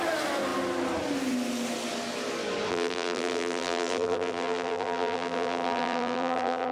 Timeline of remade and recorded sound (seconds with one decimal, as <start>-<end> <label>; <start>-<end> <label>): 0.0-2.7 recorded; 2.7-6.7 remade